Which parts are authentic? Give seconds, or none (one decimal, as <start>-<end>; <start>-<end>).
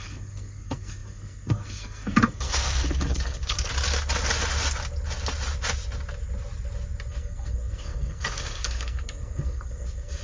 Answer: 3.7-7.1